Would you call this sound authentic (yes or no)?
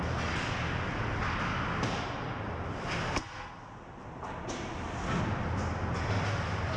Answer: yes